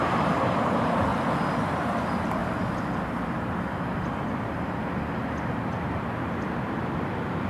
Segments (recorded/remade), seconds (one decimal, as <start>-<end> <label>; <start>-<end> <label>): 0.0-1.1 remade; 1.1-2.0 recorded; 2.0-2.4 remade; 2.4-4.5 recorded; 4.5-7.5 remade